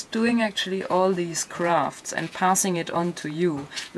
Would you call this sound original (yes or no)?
no